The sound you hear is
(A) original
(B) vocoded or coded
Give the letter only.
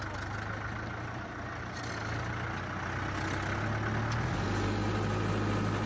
A